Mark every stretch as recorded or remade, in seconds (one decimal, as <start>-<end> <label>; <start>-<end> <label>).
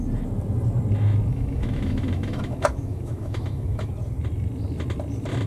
0.0-1.3 recorded; 1.3-3.9 remade; 3.9-5.5 recorded